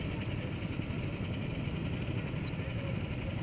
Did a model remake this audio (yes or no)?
no